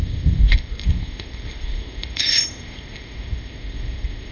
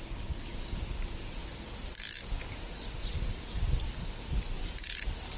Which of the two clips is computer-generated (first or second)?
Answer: first